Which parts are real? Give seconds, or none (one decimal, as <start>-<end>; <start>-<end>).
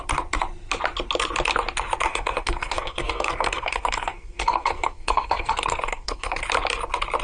0.0-2.1; 6.4-7.2